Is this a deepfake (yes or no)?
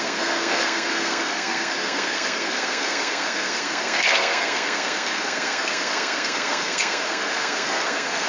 yes